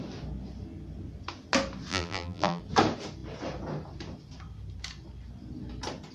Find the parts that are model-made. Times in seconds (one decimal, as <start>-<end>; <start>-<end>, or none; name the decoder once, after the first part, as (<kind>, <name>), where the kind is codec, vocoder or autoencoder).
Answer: 1.9-2.6 (vocoder, BigVGAN v2)